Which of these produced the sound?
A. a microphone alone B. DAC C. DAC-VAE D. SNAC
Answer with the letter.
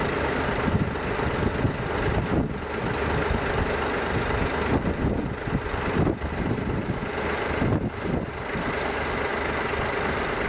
A